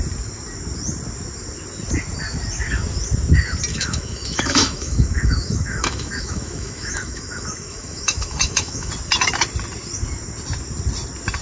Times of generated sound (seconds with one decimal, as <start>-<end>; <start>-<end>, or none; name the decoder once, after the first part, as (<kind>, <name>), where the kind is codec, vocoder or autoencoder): 3.7-8.9 (autoencoder, DAC-VAE)